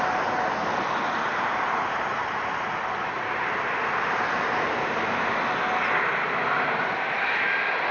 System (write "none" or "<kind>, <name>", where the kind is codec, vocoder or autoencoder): none